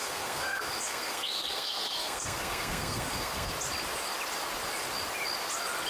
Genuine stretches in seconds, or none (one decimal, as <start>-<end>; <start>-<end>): 3.5-5.9